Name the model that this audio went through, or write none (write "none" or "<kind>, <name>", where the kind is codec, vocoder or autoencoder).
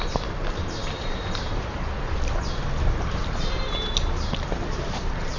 vocoder, BigVGAN v2